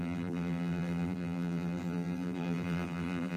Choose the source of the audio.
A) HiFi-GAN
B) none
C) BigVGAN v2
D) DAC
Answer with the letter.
C